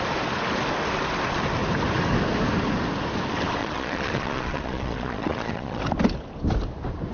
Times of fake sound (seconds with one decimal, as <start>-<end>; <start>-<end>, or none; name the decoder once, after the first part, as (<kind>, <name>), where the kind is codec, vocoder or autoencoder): 3.6-5.8 (vocoder, Vocos)